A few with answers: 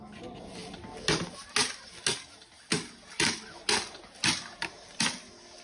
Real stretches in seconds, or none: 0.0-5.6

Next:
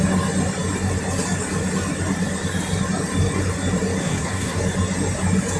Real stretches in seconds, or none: 0.0-4.0; 4.6-5.6

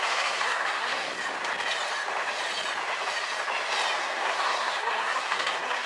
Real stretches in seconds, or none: 1.1-4.0

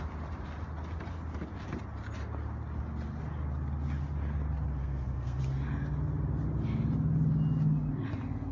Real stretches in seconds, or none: 0.0-4.8; 5.4-8.5

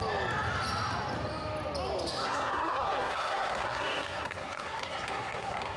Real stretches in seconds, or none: 0.0-2.2